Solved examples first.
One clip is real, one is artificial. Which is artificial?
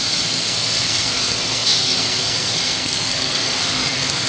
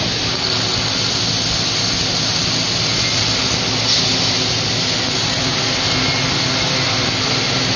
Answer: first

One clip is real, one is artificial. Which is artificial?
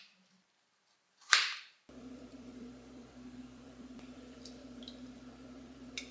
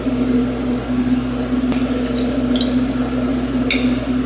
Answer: first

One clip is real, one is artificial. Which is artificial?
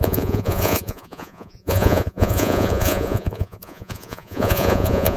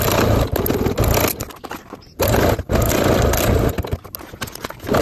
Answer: first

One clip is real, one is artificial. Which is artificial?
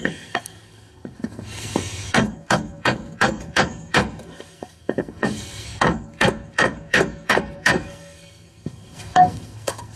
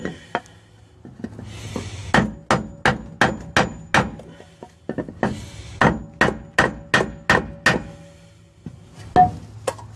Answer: first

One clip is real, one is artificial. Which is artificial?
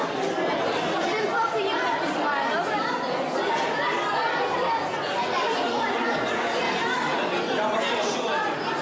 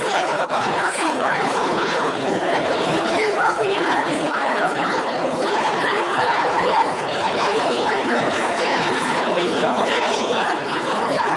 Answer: second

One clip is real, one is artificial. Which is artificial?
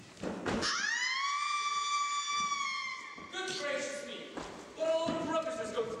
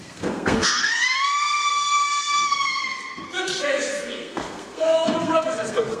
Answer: second